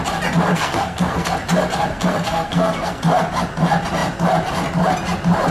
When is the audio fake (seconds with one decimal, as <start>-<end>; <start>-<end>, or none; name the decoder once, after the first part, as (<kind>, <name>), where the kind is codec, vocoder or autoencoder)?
0.5-1.3 (codec, SNAC); 1.9-3.0